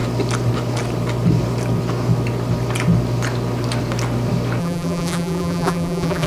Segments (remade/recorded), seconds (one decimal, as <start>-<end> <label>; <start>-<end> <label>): 0.0-4.6 recorded; 4.6-6.3 remade